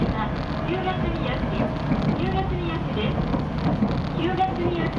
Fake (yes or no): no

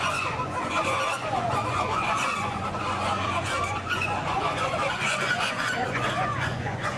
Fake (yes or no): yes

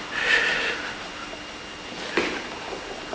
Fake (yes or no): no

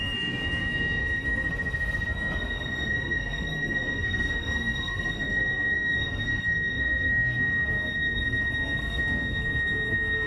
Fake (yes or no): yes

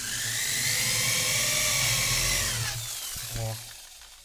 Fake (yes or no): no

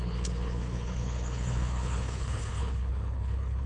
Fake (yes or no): yes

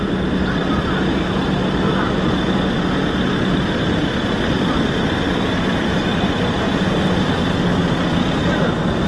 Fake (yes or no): no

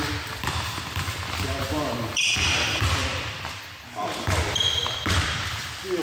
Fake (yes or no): yes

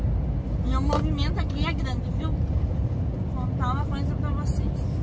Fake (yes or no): no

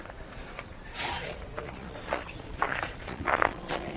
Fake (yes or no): yes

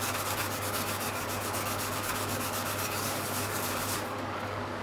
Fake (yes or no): yes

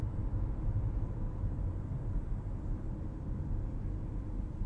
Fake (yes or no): no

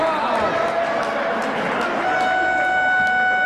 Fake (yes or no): no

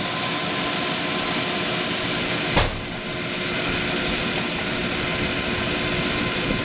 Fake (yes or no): no